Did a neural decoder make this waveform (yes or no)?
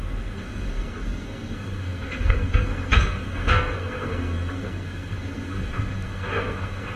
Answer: yes